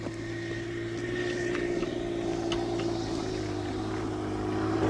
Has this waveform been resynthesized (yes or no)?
no